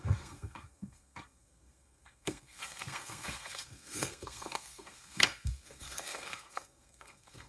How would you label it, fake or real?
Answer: fake